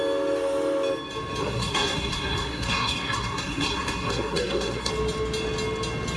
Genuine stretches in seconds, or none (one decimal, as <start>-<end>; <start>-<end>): 0.0-1.4; 4.9-6.2